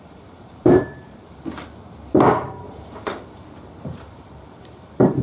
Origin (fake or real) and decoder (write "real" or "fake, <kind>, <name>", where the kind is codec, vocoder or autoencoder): fake, vocoder, BigVGAN v2